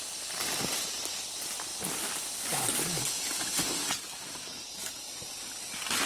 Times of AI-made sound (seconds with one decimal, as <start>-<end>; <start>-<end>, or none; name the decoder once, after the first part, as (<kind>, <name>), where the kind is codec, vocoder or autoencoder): none